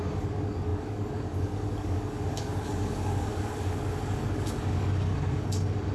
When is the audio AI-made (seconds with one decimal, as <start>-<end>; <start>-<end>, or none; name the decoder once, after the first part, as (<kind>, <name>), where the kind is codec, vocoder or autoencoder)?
0.0-5.9 (codec, DAC)